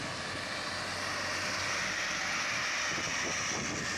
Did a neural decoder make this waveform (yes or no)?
no